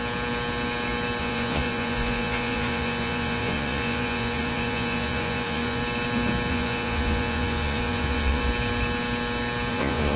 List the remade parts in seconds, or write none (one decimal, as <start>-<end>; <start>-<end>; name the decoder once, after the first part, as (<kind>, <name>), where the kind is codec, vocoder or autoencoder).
1.2-5.8 (vocoder, Vocos); 6.5-8.4; 9.7-10.2

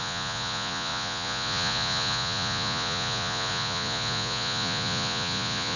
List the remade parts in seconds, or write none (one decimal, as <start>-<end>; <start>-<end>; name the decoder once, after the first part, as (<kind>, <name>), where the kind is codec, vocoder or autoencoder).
0.0-5.8 (vocoder, Vocos)

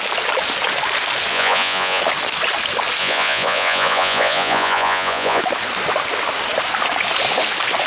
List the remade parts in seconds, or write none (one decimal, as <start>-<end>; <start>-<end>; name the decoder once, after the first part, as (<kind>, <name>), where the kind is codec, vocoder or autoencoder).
1.3-2.0 (vocoder, Vocos); 3.0-5.4